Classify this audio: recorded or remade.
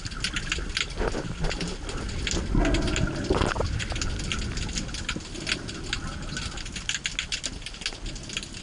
recorded